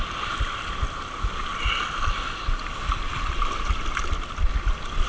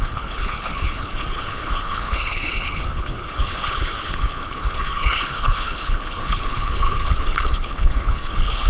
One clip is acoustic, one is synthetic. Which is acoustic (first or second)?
first